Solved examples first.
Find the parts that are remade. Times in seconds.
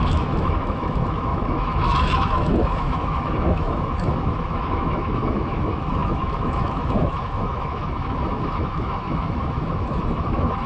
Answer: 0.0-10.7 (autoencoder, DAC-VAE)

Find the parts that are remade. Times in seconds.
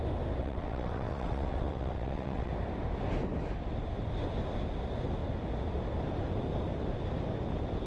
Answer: 0.4-2.5 (vocoder, WaveNeXt)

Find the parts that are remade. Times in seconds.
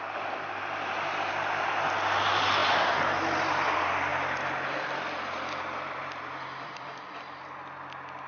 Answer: 4.1-7.1 (vocoder, BigVGAN v2)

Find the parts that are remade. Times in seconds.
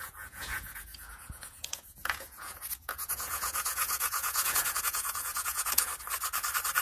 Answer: 0.0-5.9 (vocoder, Vocos)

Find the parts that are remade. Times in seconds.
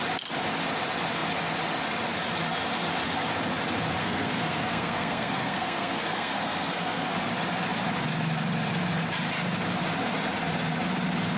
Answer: 4.0-7.3 (codec, SNAC)